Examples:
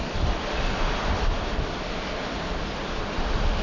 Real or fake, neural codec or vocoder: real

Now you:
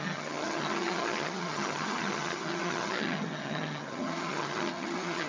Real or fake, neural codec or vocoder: fake, vocoder, HiFi-GAN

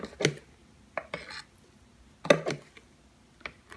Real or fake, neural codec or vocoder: real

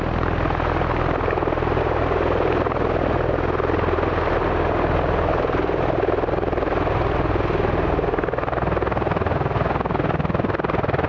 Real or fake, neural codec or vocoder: real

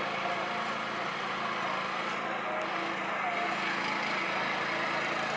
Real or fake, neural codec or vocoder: real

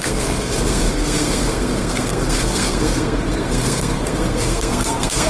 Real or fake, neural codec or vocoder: fake, codec, SNAC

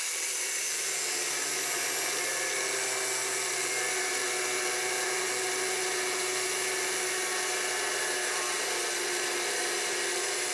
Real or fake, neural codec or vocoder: real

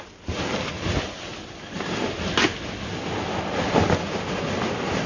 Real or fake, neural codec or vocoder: real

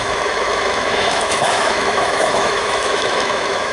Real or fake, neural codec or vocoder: fake, autoencoder, DAC-VAE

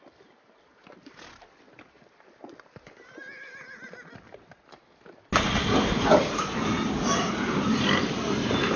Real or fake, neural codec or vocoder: real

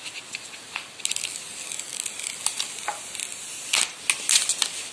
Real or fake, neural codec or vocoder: real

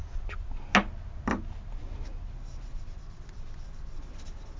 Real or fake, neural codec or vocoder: real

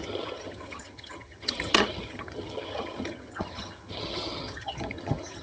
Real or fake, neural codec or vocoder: fake, vocoder, HiFi-GAN